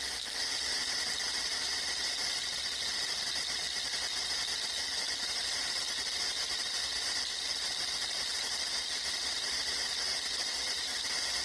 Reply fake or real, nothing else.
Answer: real